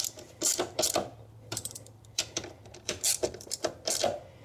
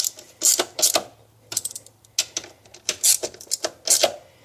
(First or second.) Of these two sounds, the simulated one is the first